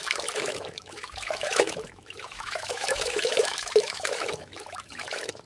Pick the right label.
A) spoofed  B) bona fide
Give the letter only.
A